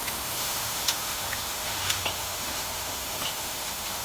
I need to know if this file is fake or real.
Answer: fake